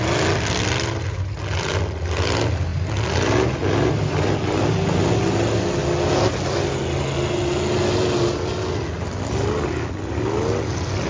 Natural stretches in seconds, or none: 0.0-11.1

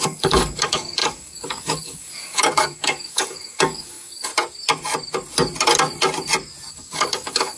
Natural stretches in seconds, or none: 4.3-6.7

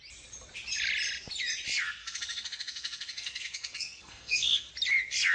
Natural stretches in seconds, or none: 0.0-2.0; 4.7-5.3

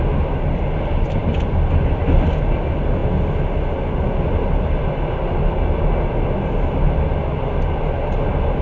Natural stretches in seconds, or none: 0.0-8.6

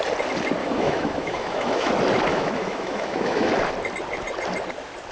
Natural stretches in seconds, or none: 0.0-0.6; 1.9-2.3; 3.5-5.1